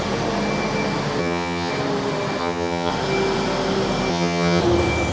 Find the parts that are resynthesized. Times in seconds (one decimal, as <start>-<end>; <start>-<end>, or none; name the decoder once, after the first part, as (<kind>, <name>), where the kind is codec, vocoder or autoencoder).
1.2-1.7 (vocoder, HiFi-GAN); 2.4-2.9; 4.1-4.6